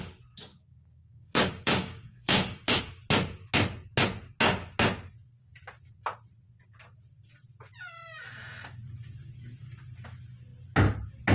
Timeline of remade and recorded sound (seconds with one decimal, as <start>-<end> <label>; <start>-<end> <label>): 0.0-0.5 recorded; 0.5-2.8 remade; 2.8-11.3 recorded